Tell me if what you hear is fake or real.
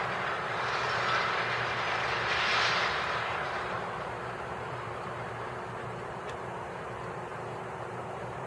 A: fake